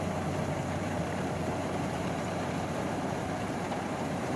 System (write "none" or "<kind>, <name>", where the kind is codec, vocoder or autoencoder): vocoder, BigVGAN v2